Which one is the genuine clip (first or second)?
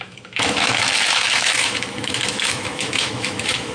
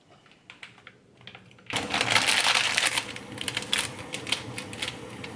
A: second